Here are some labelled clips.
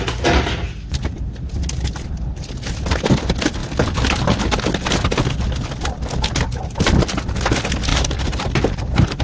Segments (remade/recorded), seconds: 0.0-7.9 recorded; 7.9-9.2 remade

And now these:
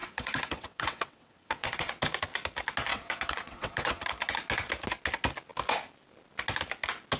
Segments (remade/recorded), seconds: 0.0-2.0 remade; 2.0-2.9 recorded; 2.9-4.0 remade; 4.0-7.2 recorded

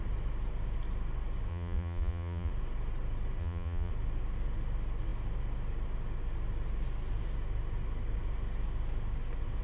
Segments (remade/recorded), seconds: 0.0-1.5 recorded; 1.5-2.5 remade; 2.5-3.4 recorded; 3.4-3.9 remade; 3.9-9.6 recorded